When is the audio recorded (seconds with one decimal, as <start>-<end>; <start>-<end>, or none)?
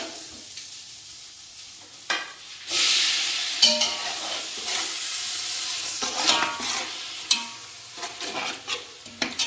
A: 0.0-9.5